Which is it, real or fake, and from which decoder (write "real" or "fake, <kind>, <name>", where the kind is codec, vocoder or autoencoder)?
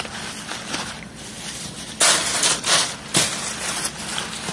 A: real